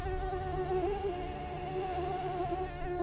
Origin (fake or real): real